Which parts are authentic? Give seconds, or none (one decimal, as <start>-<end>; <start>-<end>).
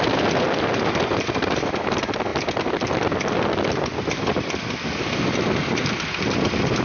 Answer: 0.0-6.8